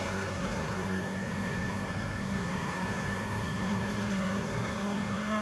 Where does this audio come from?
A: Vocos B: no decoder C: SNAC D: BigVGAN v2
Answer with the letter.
C